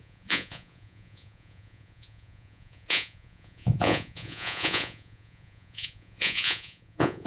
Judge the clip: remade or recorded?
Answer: remade